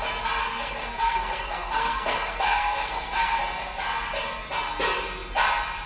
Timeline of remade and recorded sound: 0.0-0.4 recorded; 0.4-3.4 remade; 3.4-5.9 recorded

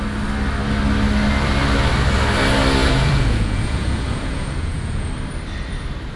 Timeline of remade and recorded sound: 0.0-2.8 recorded; 2.8-5.1 remade; 5.1-6.2 recorded

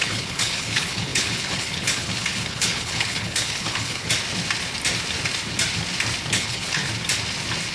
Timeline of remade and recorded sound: 0.0-4.1 remade; 4.1-6.3 recorded; 6.3-6.8 remade; 6.8-7.7 recorded

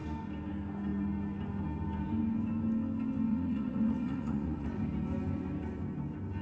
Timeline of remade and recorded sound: 0.0-3.3 recorded; 3.3-4.8 remade; 4.8-6.4 recorded

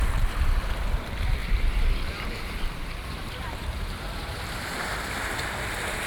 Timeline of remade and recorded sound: 0.0-1.4 recorded; 1.4-5.1 remade; 5.1-6.1 recorded

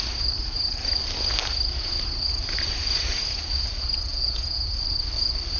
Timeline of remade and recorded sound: 0.0-4.1 recorded; 4.1-4.7 remade; 4.7-5.6 recorded